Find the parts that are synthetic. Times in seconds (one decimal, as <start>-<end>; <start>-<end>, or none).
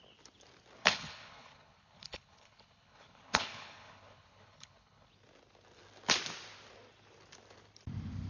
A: 0.8-5.1